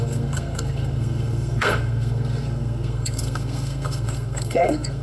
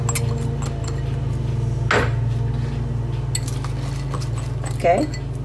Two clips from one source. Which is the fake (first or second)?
first